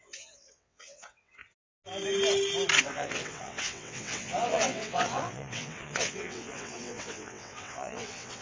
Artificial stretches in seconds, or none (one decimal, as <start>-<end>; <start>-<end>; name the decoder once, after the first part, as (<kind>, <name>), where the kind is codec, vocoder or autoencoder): 0.0-1.4 (vocoder, WaveNeXt); 2.8-8.4